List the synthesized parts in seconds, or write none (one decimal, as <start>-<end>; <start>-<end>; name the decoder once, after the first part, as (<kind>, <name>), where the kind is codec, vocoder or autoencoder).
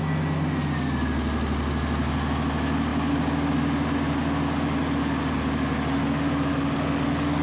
6.5-7.4 (codec, DAC)